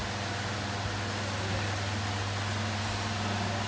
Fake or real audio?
real